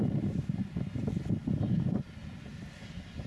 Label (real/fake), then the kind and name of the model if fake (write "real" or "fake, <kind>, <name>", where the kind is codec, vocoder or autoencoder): real